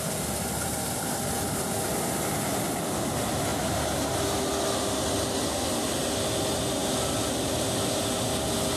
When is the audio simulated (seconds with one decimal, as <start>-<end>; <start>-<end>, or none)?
none